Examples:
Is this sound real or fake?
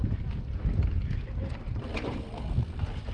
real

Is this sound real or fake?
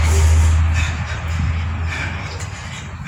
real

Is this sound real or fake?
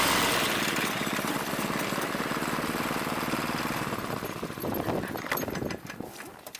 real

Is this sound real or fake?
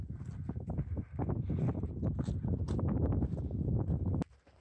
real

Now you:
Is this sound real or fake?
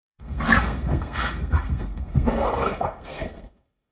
fake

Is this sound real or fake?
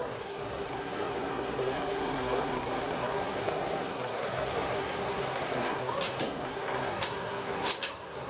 fake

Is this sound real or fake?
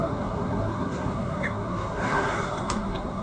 fake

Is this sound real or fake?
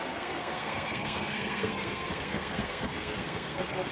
fake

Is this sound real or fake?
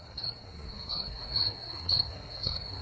fake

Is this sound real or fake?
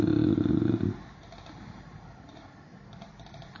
real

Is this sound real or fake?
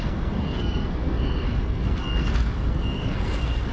fake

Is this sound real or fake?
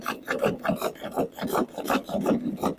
real